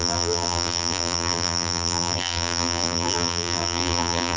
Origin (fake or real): fake